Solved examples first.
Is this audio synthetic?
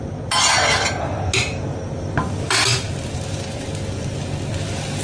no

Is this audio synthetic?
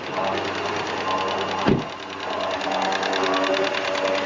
no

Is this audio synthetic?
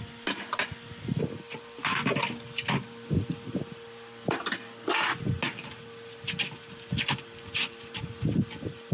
no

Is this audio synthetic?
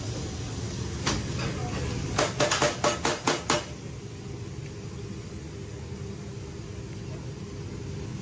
no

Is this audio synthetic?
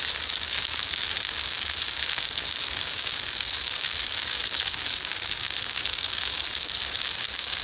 yes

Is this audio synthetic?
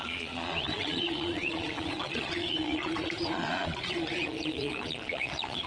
yes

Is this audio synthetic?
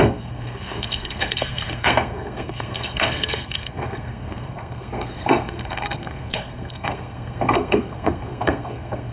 yes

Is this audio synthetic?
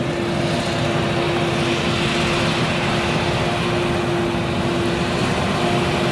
no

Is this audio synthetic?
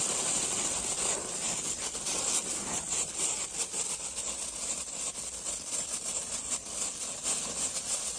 no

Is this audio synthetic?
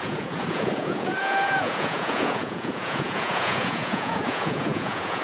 yes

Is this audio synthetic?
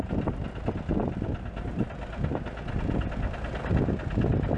no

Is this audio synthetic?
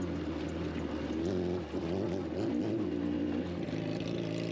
no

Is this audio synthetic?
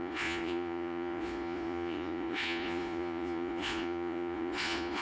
yes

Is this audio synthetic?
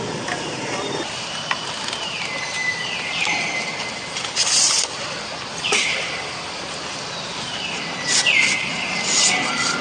no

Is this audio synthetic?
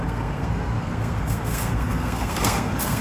yes